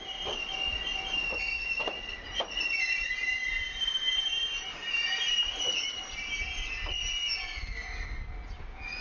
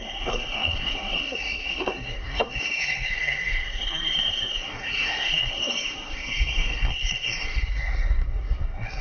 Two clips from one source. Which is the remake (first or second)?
second